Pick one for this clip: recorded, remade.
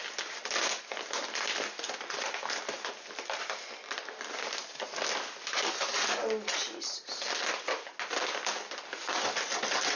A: recorded